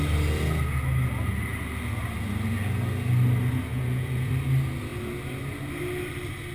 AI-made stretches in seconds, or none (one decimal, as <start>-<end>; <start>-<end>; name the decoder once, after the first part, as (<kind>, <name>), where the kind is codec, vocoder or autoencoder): 3.7-4.3 (vocoder, Vocos)